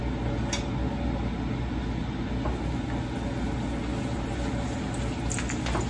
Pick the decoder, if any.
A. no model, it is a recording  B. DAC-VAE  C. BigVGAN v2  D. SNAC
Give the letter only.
A